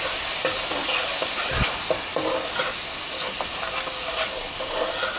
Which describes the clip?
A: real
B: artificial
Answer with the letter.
A